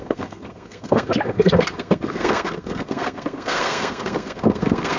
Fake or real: fake